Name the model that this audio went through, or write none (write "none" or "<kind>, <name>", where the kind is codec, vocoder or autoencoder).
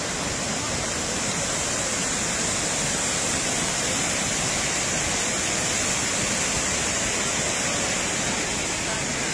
none